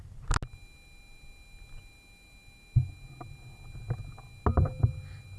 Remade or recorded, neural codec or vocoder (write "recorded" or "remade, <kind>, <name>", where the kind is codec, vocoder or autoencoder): recorded